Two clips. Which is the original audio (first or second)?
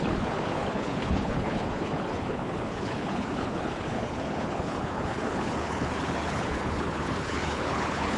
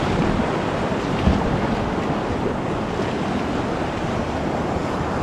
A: second